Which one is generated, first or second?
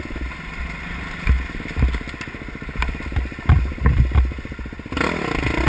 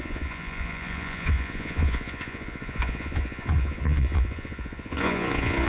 second